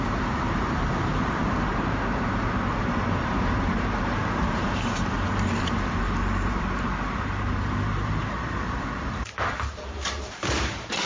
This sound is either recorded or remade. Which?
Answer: remade